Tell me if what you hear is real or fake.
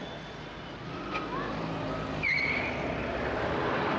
real